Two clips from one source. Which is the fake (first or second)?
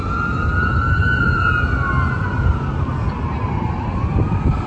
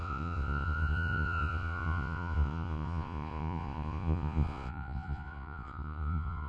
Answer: second